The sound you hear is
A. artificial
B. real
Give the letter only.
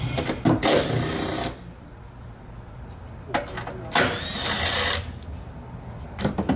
B